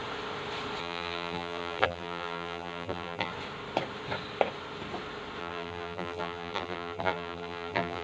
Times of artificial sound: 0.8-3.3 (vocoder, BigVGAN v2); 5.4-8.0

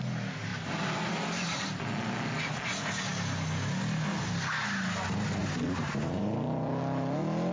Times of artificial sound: 0.5-1.6 (vocoder, BigVGAN v2); 5.4-6.8